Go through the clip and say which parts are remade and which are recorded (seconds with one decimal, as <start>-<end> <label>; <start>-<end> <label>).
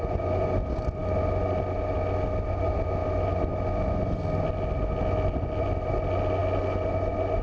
0.0-7.4 recorded